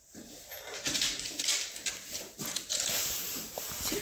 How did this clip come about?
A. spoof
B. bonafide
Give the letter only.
A